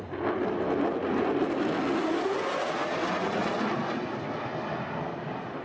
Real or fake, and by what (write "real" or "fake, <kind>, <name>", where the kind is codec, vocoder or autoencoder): real